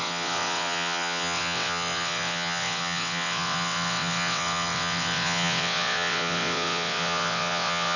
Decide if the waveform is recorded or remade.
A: remade